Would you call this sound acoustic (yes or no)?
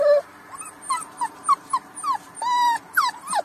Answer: yes